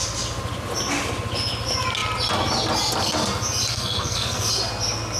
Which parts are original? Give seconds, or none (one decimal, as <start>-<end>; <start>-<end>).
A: 0.0-3.7; 4.5-5.2